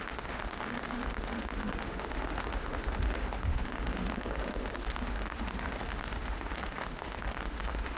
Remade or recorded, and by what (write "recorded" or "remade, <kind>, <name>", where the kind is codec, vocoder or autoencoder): remade, autoencoder, DAC-VAE